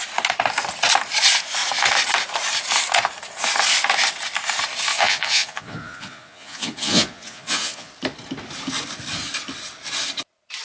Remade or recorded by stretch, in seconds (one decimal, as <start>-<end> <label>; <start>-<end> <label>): 0.0-4.9 recorded; 4.9-7.9 remade; 7.9-10.6 recorded